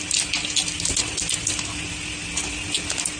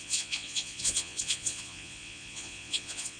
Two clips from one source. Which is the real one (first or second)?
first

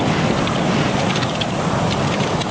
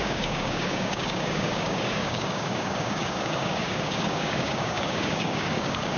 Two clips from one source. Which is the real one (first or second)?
first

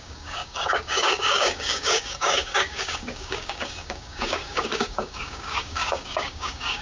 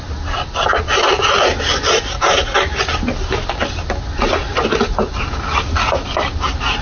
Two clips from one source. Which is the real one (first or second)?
second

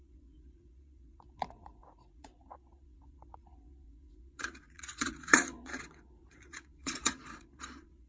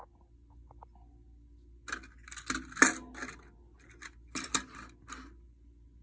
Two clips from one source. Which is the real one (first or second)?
second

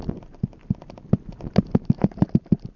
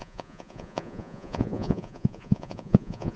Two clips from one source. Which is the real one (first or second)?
first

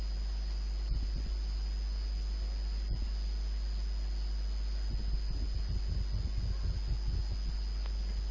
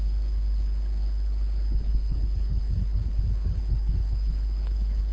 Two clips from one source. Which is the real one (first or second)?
first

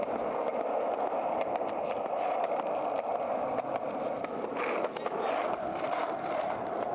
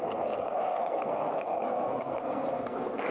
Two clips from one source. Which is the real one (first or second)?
first